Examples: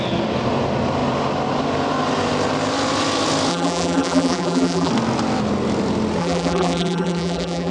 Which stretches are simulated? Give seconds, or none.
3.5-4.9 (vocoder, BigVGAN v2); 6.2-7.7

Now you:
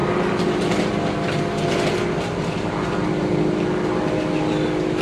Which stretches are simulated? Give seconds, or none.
none

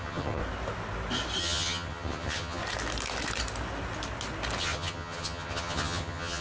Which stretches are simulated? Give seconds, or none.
0.0-0.4 (vocoder, HiFi-GAN); 1.4-2.6; 4.6-6.4

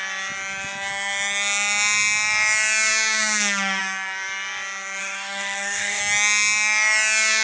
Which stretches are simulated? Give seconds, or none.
5.0-6.0 (codec, DAC)

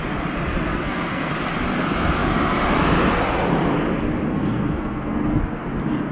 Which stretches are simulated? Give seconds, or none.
0.7-1.3 (codec, SNAC); 4.3-5.4

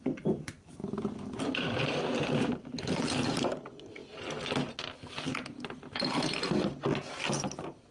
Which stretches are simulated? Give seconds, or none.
0.8-1.8 (vocoder, BigVGAN v2)

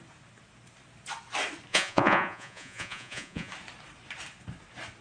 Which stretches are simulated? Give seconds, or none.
1.7-3.5 (vocoder, Vocos)

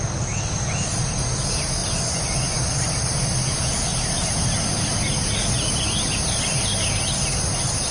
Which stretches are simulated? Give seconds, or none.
1.8-2.9 (vocoder, Vocos)